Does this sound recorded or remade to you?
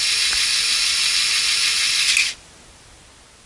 recorded